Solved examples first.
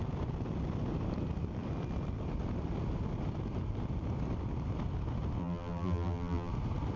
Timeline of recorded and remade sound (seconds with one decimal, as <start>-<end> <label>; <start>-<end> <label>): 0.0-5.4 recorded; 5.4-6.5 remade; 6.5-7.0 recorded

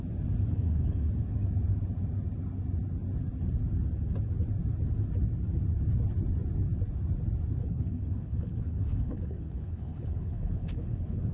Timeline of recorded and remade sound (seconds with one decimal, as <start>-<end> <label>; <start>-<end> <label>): 0.0-0.5 recorded; 0.5-1.1 remade; 1.1-7.6 recorded; 7.6-11.3 remade

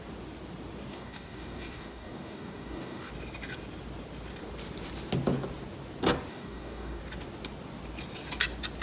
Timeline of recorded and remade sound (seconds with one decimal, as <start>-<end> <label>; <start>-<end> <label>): 0.0-0.9 recorded; 0.9-3.1 remade; 3.1-6.3 recorded; 6.3-7.0 remade; 7.0-8.8 recorded